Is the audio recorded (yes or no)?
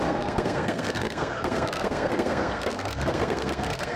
no